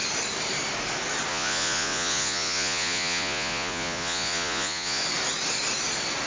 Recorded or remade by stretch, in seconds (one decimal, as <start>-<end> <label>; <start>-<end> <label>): 0.0-1.3 recorded; 1.3-5.0 remade; 5.0-6.3 recorded